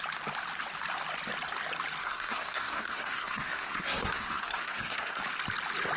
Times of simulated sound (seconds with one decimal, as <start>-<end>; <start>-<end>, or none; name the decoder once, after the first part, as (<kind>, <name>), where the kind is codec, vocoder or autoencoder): 2.0-5.2 (codec, SNAC)